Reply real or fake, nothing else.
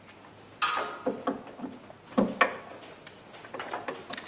real